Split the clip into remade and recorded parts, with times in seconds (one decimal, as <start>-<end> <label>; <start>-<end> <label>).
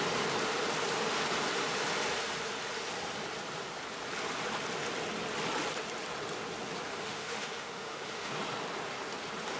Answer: 0.0-6.9 recorded; 6.9-8.3 remade; 8.3-9.6 recorded